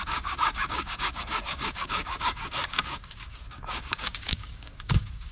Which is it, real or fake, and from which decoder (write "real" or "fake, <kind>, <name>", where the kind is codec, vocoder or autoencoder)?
fake, codec, DAC